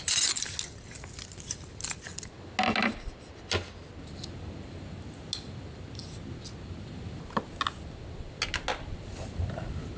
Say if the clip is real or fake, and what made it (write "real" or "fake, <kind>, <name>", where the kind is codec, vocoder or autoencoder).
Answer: real